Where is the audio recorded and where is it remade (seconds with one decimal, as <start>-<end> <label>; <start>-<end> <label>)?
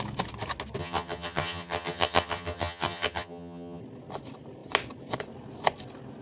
0.0-0.8 recorded; 0.8-3.8 remade; 3.8-6.2 recorded